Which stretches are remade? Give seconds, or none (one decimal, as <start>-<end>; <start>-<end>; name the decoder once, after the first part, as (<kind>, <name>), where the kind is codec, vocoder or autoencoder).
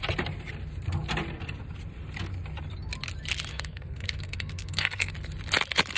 3.5-5.1 (codec, SNAC)